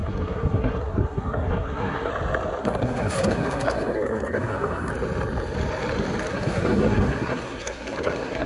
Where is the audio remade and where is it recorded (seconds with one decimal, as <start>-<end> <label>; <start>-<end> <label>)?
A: 0.0-2.1 remade; 2.1-2.6 recorded; 2.6-4.9 remade; 4.9-6.3 recorded; 6.3-8.5 remade